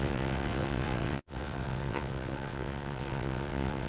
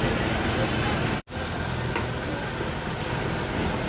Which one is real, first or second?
second